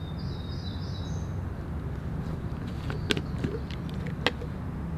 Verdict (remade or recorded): recorded